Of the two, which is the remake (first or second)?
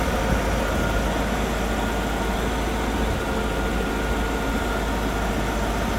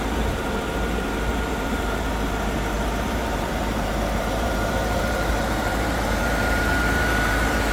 second